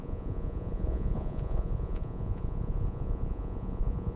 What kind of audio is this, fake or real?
fake